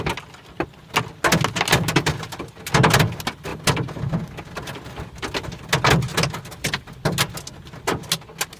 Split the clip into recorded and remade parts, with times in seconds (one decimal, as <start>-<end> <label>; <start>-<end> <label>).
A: 0.0-8.6 recorded